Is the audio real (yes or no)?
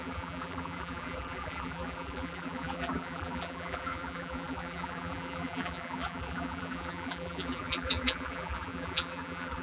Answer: no